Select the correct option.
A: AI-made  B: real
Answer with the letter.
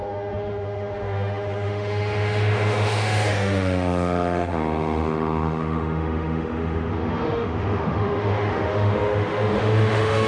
A